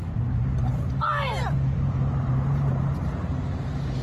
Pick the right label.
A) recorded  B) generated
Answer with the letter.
B